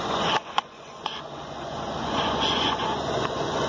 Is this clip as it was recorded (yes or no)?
no